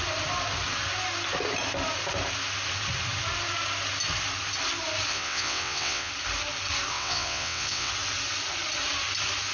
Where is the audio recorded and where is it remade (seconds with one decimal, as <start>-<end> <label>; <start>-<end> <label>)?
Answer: 0.0-5.1 recorded; 5.1-6.1 remade; 6.1-6.9 recorded; 6.9-7.9 remade; 7.9-9.5 recorded